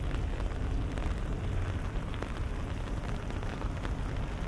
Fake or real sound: real